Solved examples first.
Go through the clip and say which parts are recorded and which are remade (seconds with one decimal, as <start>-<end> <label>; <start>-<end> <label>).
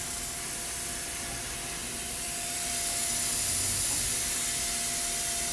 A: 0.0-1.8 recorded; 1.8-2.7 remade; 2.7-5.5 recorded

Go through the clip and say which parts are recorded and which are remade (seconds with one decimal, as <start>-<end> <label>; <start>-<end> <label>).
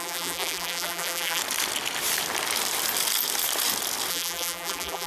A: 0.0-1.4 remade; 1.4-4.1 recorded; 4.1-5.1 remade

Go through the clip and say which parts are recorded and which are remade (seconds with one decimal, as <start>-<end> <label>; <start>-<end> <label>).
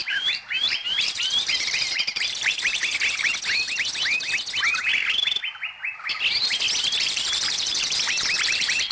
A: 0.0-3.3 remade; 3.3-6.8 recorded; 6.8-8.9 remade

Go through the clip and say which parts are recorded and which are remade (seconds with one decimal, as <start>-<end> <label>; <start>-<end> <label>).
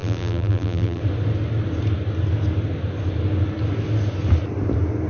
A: 0.0-1.0 remade; 1.0-5.1 recorded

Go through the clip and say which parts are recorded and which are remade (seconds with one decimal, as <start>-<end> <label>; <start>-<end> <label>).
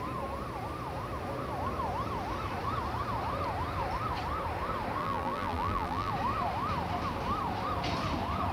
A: 0.0-5.0 recorded; 5.0-6.1 remade; 6.1-8.5 recorded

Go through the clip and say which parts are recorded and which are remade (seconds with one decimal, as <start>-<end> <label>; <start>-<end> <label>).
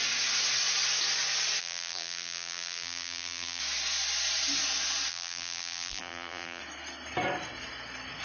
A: 0.0-1.6 recorded; 1.6-3.6 remade; 3.6-5.1 recorded; 5.1-6.6 remade; 6.6-8.2 recorded